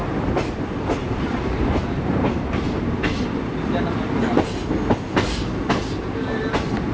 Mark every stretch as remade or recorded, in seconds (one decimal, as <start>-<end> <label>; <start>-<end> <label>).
0.0-1.0 recorded; 1.0-2.9 remade; 2.9-6.9 recorded